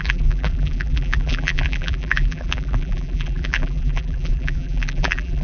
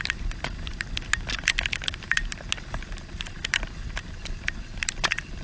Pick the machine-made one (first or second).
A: first